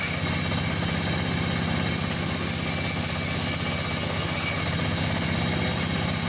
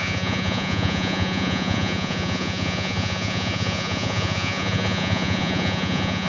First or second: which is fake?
second